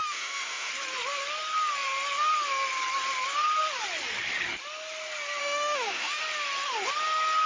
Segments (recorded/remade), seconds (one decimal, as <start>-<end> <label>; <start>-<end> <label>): 0.0-0.7 remade; 0.7-5.4 recorded; 5.4-6.2 remade; 6.2-7.5 recorded